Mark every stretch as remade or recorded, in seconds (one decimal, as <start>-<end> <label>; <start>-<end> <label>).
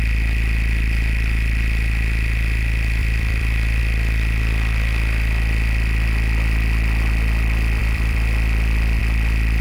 0.0-3.0 recorded; 3.0-3.8 remade; 3.8-7.8 recorded; 7.8-9.0 remade; 9.0-9.6 recorded